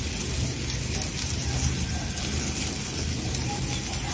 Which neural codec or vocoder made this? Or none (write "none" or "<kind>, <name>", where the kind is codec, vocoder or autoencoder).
none